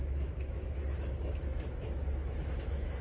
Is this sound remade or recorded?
remade